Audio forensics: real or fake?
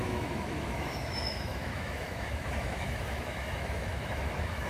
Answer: fake